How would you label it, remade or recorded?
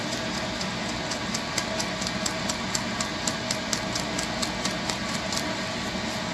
recorded